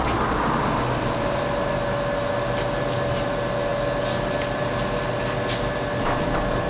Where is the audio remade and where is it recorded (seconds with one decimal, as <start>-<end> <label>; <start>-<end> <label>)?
0.0-6.7 recorded